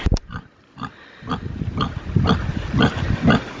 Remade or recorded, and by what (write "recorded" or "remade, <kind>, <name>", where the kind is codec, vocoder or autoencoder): recorded